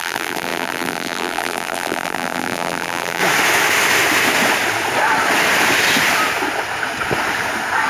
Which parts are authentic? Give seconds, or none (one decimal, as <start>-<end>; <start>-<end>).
3.2-7.9